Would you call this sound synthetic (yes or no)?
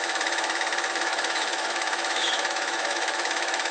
yes